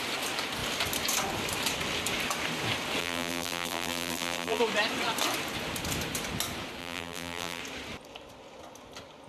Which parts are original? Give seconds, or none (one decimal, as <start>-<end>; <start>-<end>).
0.0-3.0; 4.6-6.8; 7.6-9.3